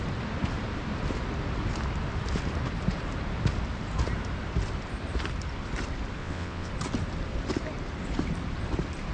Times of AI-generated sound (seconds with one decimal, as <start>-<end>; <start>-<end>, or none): 6.2-6.7

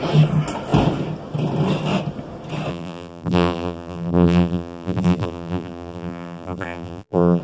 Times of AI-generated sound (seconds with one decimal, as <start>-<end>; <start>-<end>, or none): 2.7-7.4